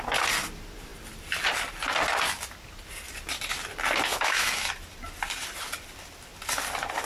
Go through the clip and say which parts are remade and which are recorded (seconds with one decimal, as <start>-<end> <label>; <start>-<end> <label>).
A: 0.0-4.1 recorded; 4.1-4.7 remade; 4.7-7.1 recorded